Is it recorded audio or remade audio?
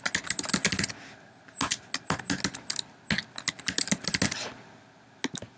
recorded